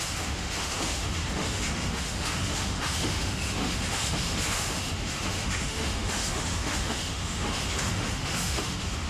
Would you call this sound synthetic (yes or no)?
yes